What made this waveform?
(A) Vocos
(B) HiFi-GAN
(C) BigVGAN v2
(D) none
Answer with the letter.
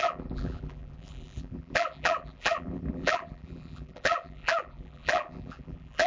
C